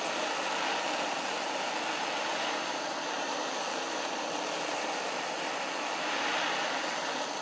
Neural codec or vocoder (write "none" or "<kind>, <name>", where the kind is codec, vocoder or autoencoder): vocoder, BigVGAN v2